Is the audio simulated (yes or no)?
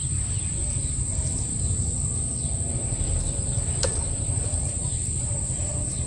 yes